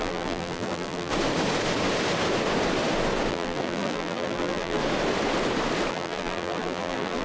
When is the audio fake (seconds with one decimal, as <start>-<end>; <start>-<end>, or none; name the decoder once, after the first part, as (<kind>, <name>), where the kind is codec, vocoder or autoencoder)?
0.0-1.1 (vocoder, BigVGAN v2); 3.3-4.8; 5.9-7.2